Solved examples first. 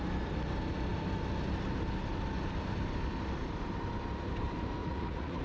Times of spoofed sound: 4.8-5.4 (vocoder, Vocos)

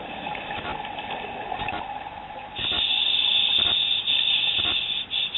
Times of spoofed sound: none

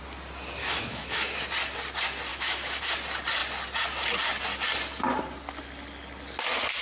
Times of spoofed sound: 0.6-1.4 (autoencoder, DAC-VAE); 2.3-2.8

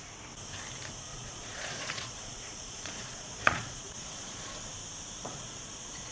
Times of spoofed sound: 1.1-4.7 (vocoder, Vocos); 5.2-6.1

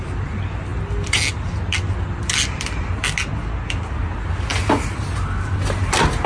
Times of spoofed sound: none

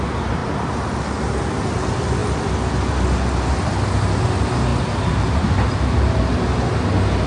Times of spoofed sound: 0.4-1.4 (vocoder, BigVGAN v2); 4.7-6.2